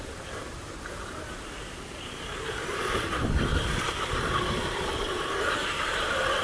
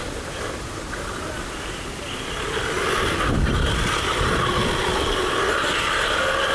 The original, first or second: second